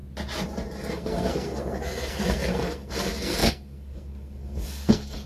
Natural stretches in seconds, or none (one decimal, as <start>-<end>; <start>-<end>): 0.0-0.9